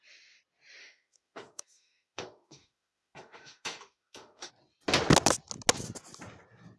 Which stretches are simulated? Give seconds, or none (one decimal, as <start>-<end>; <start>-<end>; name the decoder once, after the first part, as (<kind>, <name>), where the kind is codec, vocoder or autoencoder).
0.8-4.5 (autoencoder, DAC-VAE)